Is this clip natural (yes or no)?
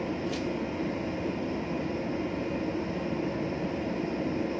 yes